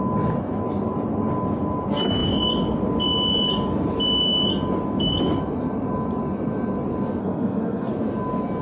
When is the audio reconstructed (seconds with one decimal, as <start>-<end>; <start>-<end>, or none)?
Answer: 7.2-7.9